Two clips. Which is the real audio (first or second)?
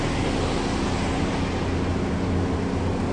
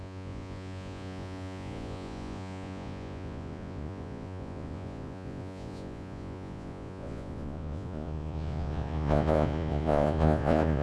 first